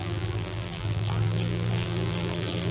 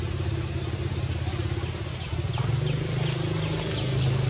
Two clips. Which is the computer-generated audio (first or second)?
first